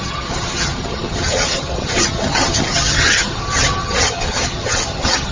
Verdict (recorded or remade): remade